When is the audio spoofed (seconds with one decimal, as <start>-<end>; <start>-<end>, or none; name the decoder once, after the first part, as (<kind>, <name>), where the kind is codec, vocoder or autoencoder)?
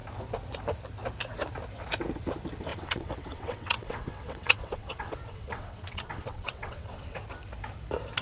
2.7-7.2 (vocoder, WaveNeXt)